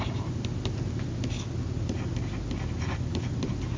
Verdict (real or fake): real